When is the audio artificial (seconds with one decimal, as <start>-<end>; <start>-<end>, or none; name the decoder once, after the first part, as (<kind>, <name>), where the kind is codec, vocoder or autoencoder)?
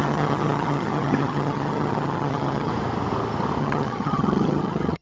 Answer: 0.0-2.7 (vocoder, HiFi-GAN); 3.6-5.0